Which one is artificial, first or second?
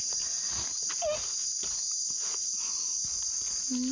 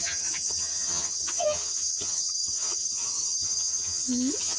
second